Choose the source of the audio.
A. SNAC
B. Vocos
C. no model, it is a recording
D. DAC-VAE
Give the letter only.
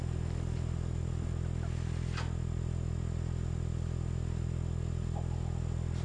C